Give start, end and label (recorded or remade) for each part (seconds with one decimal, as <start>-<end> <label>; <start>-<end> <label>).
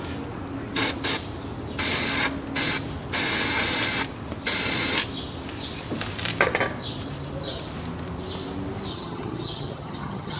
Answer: 0.0-8.9 recorded; 8.9-10.4 remade